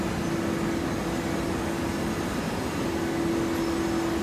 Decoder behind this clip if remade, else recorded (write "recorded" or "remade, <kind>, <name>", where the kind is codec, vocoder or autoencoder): recorded